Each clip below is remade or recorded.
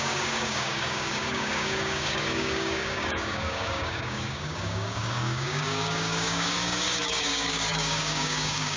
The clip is remade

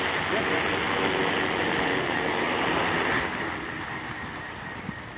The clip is recorded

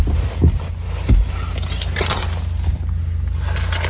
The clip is recorded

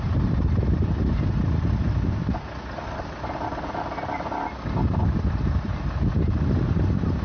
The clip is recorded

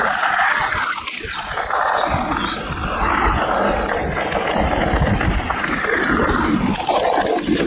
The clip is recorded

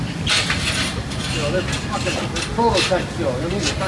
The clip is recorded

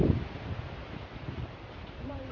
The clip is remade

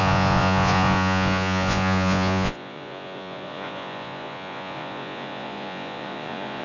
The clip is remade